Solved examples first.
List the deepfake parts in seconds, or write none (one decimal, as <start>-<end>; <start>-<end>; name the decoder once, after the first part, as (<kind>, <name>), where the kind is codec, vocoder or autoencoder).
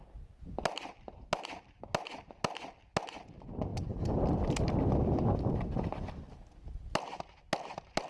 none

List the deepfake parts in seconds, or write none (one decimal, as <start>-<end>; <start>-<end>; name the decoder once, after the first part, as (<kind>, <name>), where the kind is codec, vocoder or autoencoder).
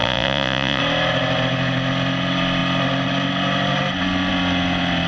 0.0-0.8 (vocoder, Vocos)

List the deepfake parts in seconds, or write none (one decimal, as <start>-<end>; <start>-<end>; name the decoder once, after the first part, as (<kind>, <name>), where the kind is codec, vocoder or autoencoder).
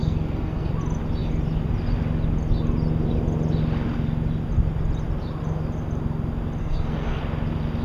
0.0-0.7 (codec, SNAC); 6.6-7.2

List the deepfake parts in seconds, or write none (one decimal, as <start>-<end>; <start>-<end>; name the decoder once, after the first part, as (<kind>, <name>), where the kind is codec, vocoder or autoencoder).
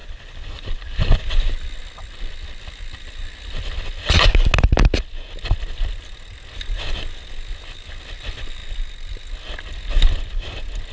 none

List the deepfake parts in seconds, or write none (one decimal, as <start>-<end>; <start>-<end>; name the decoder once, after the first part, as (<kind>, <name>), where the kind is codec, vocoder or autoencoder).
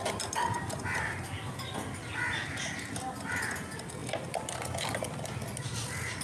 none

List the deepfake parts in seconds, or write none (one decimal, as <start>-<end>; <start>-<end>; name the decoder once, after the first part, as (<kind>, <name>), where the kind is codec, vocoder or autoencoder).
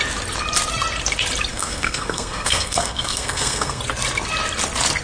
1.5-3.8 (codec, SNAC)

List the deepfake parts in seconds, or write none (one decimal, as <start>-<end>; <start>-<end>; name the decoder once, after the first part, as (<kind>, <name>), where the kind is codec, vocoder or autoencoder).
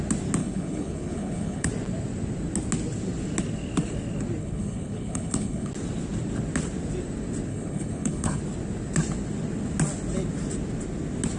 0.4-1.7 (codec, HILCodec); 4.4-5.7; 7.5-8.4